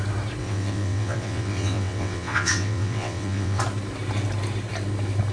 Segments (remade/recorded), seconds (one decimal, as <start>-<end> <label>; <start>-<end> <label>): 0.0-0.4 recorded; 0.4-3.6 remade; 3.6-5.3 recorded